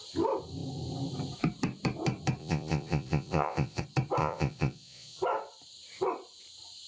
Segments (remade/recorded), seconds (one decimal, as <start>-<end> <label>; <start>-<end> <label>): 0.0-2.4 recorded; 2.4-3.8 remade; 3.8-4.2 recorded; 4.2-5.2 remade; 5.2-6.9 recorded